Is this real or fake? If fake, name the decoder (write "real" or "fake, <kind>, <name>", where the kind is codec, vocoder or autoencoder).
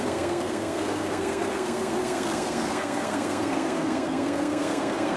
fake, codec, SNAC